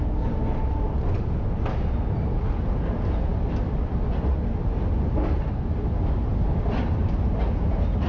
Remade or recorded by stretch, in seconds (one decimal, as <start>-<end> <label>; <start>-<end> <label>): 0.0-8.1 recorded